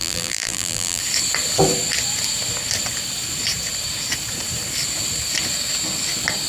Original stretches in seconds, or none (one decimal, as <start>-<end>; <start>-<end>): 1.0-6.5